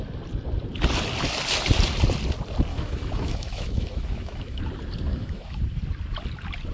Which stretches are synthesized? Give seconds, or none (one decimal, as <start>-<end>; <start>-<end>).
2.7-4.6; 5.1-5.6